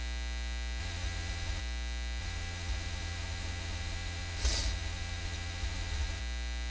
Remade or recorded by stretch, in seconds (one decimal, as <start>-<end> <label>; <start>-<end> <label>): 0.0-0.8 recorded; 0.8-1.6 remade; 1.6-2.2 recorded; 2.2-6.2 remade; 6.2-6.7 recorded